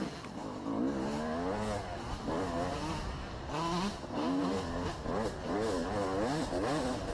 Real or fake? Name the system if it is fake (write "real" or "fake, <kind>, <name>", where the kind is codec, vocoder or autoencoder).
real